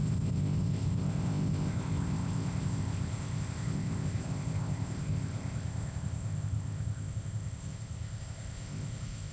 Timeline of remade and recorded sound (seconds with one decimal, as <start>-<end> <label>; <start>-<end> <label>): 0.0-9.3 remade